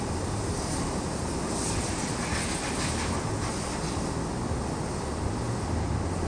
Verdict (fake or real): real